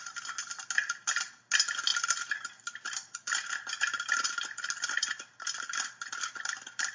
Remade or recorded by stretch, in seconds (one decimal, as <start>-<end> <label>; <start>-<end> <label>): 0.0-6.9 recorded